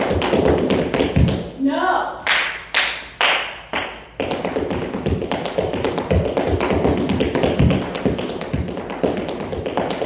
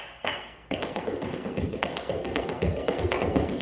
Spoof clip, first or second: second